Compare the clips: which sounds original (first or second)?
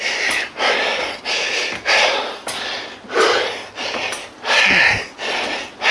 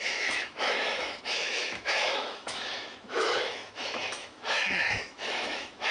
first